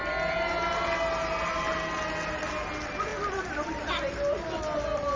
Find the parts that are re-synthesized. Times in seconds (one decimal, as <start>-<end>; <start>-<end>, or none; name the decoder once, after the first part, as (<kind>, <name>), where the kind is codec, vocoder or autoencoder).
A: none